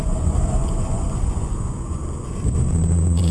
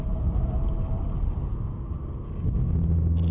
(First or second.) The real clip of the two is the second